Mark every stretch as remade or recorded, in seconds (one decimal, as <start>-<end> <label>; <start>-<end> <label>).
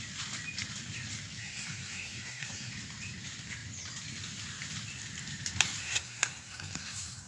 0.0-1.4 recorded; 1.4-2.7 remade; 2.7-5.8 recorded; 5.8-7.3 remade